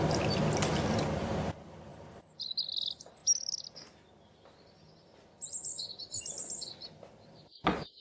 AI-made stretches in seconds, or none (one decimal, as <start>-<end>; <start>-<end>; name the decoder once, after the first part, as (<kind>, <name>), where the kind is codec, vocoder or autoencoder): 1.9-2.7 (vocoder, BigVGAN v2); 5.7-6.7